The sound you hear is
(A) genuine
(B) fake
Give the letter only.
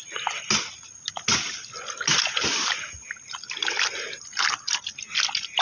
A